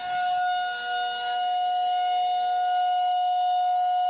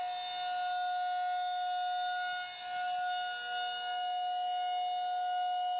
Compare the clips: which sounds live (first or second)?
second